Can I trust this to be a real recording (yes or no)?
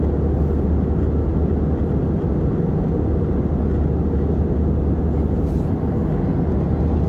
yes